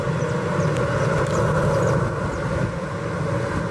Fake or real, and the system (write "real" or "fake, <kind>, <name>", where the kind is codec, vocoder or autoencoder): real